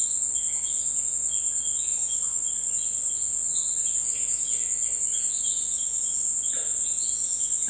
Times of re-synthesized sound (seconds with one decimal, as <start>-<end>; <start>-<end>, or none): 0.0-1.9; 3.1-3.5

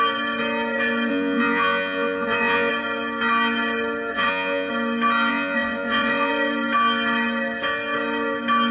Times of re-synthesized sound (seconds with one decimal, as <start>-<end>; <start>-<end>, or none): 1.1-2.7; 4.1-4.7; 5.3-6.3

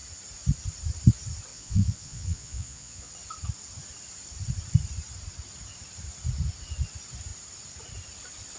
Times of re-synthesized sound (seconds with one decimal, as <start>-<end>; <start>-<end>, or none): 1.5-3.1

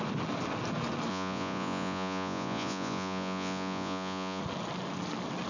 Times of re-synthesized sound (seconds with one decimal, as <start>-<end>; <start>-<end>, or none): 1.1-4.4

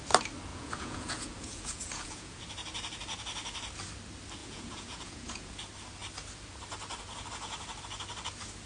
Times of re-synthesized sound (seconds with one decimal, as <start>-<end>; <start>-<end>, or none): 0.5-2.4; 4.4-5.5

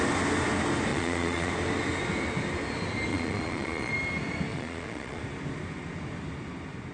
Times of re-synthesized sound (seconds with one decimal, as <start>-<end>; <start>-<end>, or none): 0.9-1.5; 3.1-3.9; 4.5-5.2